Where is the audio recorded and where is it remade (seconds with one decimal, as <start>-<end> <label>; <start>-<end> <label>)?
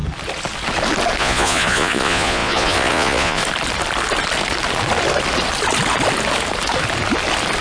0.0-1.2 recorded; 1.2-3.4 remade; 3.4-7.6 recorded